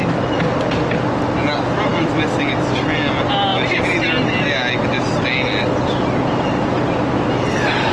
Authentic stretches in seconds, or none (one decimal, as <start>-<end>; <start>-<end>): 0.0-7.9

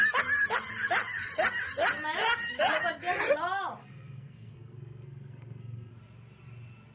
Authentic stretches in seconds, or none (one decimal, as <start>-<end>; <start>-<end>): 0.0-3.8; 5.9-6.9

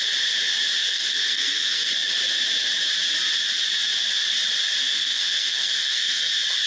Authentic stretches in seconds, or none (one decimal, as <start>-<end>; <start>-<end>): 0.0-0.8; 1.9-4.8; 6.3-6.7